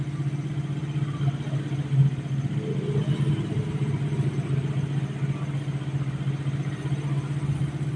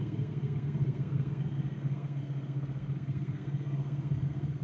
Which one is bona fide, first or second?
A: first